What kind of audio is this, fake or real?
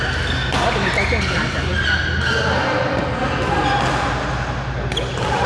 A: real